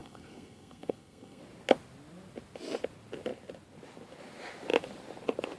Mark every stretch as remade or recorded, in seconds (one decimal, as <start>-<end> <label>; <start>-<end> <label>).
0.0-1.4 remade; 1.4-5.6 recorded